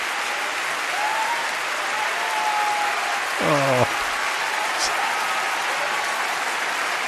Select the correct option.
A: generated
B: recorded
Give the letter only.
B